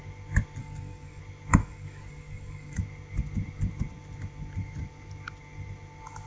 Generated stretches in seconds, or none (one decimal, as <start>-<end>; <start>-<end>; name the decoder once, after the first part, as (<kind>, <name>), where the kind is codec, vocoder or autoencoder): 0.6-1.2 (codec, DAC); 1.6-2.8